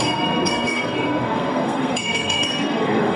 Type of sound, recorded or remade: remade